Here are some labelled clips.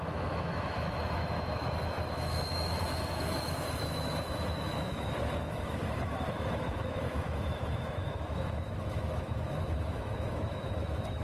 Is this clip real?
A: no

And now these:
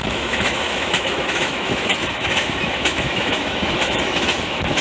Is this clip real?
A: no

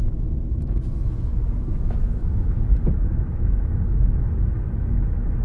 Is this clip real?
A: no